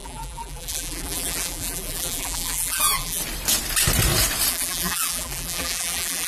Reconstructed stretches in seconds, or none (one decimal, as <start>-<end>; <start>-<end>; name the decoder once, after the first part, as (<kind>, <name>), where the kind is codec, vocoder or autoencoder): 0.0-3.2 (vocoder, BigVGAN v2); 4.5-6.3